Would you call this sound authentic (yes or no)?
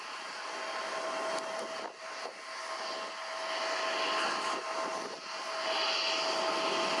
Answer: yes